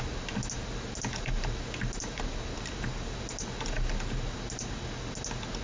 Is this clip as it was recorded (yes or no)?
yes